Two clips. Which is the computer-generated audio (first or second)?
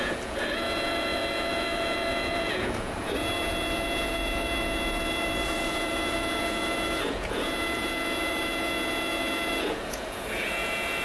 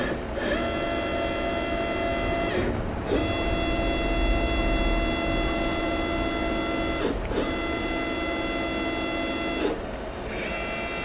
first